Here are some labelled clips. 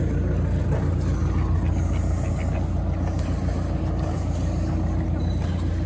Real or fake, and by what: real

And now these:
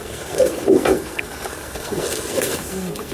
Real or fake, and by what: fake, codec, SNAC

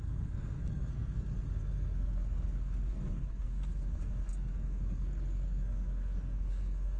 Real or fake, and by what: fake, codec, SNAC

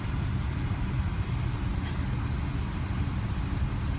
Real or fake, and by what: real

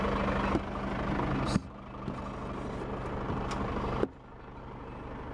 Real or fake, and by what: real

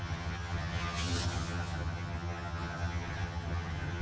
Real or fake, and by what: fake, vocoder, HiFi-GAN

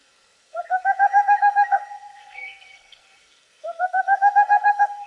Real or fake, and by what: fake, codec, SNAC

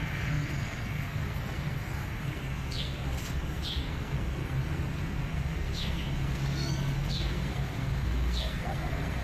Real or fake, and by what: fake, codec, SNAC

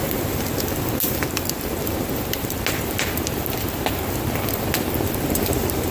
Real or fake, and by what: real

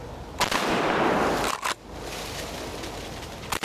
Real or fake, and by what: real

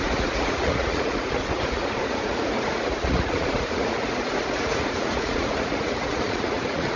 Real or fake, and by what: fake, vocoder, Vocos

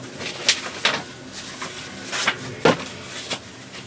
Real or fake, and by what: real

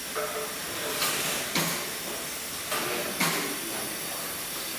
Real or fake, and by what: real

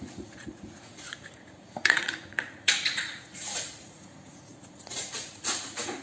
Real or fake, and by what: fake, vocoder, Vocos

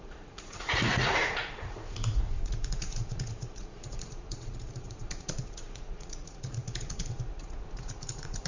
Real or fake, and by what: fake, vocoder, Vocos